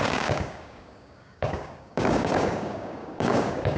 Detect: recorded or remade remade